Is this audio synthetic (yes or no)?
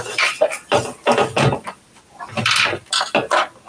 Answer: no